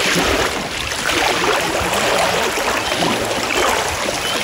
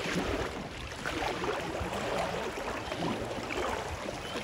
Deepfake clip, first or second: second